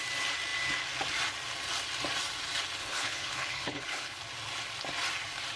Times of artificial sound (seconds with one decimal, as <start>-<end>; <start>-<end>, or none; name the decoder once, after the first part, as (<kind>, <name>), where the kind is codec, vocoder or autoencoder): 2.8-4.2 (codec, HILCodec)